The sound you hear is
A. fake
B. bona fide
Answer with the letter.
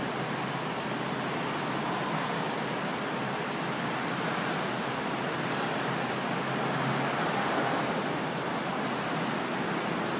B